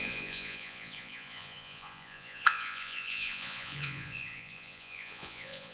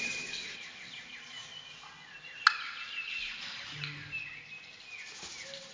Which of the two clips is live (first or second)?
second